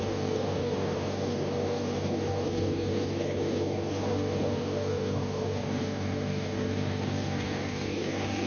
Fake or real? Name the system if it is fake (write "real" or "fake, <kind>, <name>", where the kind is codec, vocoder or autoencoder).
fake, codec, DAC